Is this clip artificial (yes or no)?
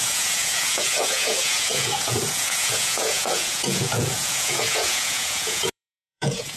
yes